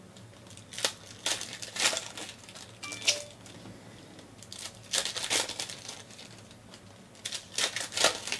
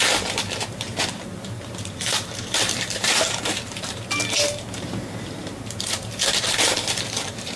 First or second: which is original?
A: first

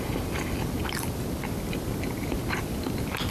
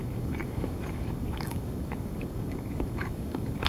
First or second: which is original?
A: first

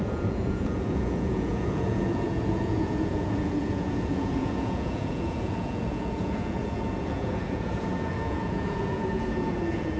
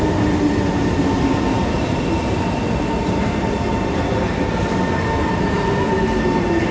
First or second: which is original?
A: second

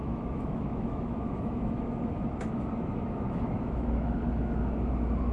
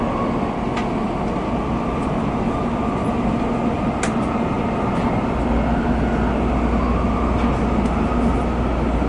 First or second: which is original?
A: second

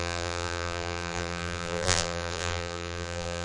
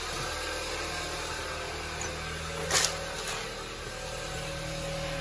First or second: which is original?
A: second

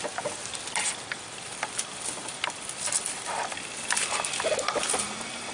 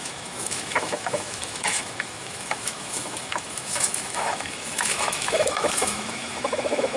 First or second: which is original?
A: first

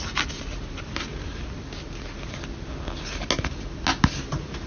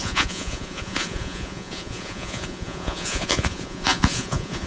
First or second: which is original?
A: first